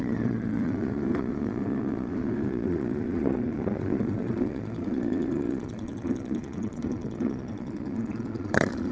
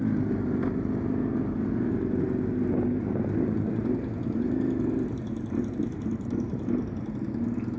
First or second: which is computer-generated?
first